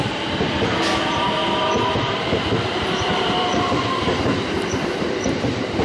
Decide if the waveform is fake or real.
fake